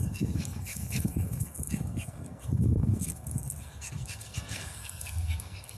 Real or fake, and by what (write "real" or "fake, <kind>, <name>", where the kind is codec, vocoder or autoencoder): fake, codec, SNAC